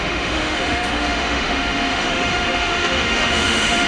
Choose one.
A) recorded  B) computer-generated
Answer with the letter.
B